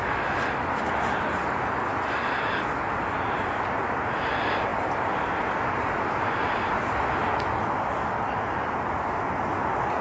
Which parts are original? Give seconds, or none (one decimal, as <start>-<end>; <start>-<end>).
0.0-10.0